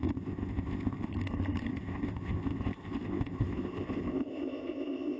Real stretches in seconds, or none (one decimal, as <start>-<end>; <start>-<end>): 1.1-1.7